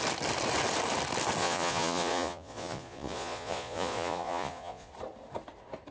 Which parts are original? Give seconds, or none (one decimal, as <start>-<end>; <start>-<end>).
0.0-1.4; 4.9-5.9